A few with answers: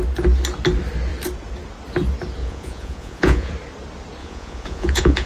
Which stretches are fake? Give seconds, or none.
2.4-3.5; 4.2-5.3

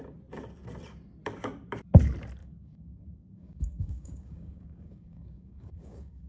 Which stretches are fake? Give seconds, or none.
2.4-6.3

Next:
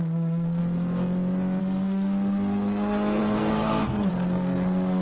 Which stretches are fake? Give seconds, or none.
0.0-0.6; 1.6-5.0

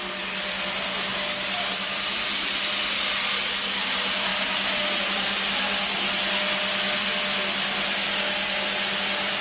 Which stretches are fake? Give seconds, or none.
none

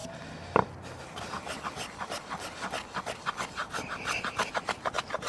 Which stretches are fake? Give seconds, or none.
none